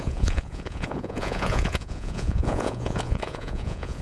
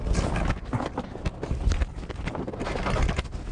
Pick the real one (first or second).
second